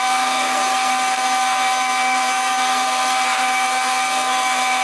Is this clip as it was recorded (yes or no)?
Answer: no